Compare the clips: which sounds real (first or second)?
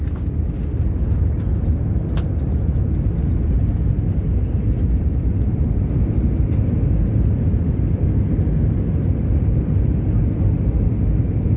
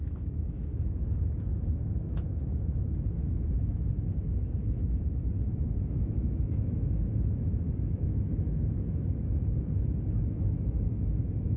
first